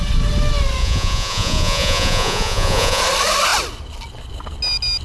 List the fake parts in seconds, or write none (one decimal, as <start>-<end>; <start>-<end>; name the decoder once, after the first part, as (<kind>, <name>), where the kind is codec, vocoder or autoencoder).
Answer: 0.8-3.0 (vocoder, Vocos)